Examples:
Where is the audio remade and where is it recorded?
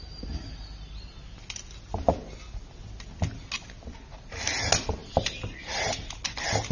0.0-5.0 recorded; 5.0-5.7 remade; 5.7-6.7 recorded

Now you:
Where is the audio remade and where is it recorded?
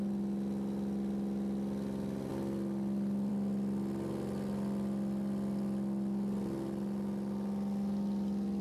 0.0-8.6 recorded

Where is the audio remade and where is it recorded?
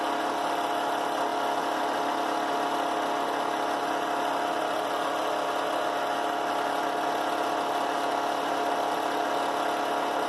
0.0-10.3 recorded